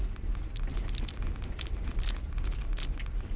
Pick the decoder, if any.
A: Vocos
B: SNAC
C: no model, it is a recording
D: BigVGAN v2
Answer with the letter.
D